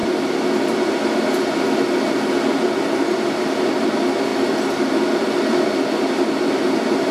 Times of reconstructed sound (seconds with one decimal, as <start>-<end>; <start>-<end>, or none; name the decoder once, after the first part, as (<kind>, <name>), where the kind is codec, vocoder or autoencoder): none